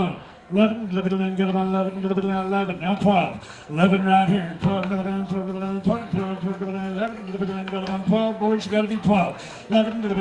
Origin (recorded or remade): remade